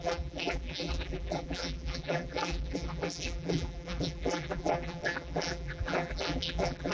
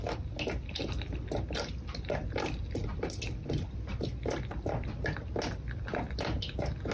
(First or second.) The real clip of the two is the second